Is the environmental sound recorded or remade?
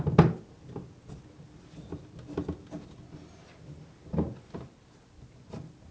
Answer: recorded